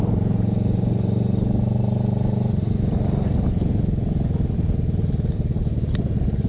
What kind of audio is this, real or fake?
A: real